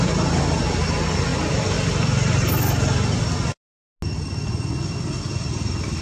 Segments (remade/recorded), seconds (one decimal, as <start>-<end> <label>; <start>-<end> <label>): 0.0-6.0 recorded